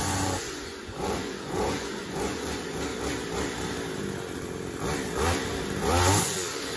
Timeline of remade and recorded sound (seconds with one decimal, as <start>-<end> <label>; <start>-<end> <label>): 0.0-2.9 remade; 2.9-6.2 recorded; 6.2-6.8 remade